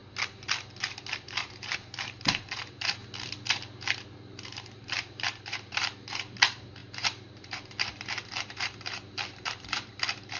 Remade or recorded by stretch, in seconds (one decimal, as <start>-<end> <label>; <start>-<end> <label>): 0.0-1.1 recorded; 1.1-3.0 remade; 3.0-3.9 recorded; 3.9-10.4 remade

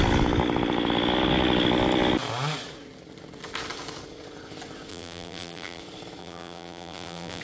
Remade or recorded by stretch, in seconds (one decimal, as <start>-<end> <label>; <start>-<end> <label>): 0.0-4.9 recorded; 4.9-5.8 remade; 5.8-6.2 recorded; 6.2-7.4 remade

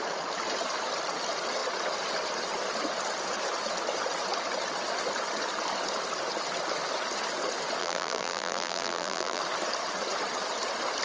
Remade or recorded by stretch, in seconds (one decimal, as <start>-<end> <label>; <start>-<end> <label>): 0.0-7.8 recorded; 7.8-9.4 remade; 9.4-11.0 recorded